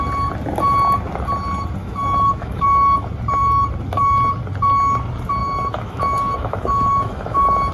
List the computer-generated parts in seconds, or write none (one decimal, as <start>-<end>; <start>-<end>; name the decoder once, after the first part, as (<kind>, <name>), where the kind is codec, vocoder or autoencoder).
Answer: 1.8-2.6 (autoencoder, DAC-VAE); 5.4-7.7

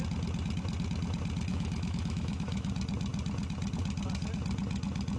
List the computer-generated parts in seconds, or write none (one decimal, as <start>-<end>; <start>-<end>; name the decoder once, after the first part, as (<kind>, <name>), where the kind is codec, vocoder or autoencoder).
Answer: 1.5-2.7 (autoencoder, DAC-VAE)

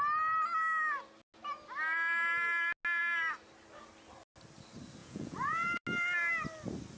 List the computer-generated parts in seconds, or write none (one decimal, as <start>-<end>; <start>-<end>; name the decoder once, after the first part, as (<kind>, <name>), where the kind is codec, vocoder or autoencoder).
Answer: 5.0-5.8 (vocoder, Vocos)

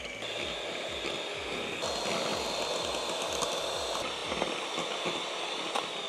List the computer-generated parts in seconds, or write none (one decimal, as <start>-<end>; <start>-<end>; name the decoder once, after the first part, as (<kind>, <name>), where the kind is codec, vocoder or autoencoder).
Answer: none